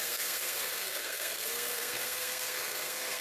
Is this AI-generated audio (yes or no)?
yes